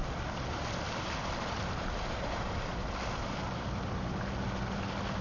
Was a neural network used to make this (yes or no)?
no